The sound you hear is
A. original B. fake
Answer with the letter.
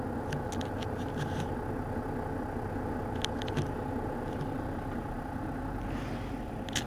A